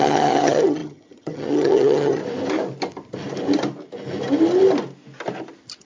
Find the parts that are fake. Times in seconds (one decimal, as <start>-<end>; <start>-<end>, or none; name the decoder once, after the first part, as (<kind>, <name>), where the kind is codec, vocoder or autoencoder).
0.0-2.2 (vocoder, HiFi-GAN)